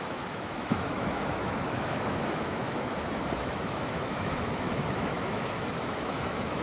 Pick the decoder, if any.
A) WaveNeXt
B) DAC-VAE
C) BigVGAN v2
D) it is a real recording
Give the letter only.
B